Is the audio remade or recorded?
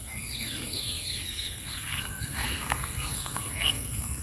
remade